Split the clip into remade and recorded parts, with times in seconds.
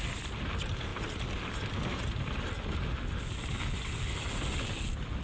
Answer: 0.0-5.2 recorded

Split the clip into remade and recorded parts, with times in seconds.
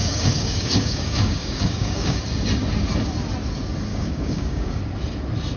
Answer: 0.0-2.2 remade; 2.2-3.9 recorded; 3.9-4.8 remade; 4.8-5.6 recorded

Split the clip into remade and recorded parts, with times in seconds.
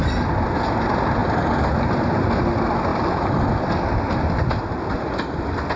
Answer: 0.0-1.2 recorded; 1.2-2.4 remade; 2.4-5.8 recorded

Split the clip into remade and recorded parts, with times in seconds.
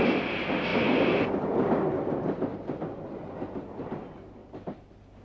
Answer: 0.0-0.7 recorded; 0.7-1.8 remade; 1.8-4.4 recorded; 4.4-5.2 remade